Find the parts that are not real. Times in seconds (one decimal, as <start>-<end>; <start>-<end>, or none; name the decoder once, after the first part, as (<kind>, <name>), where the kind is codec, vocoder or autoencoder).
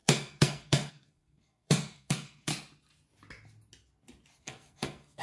0.0-2.5 (codec, SNAC); 4.4-5.2